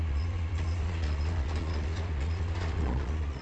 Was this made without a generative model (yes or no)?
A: no